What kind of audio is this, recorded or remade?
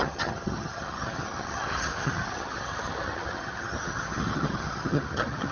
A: remade